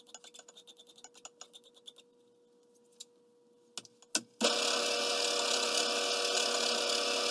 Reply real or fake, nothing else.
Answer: real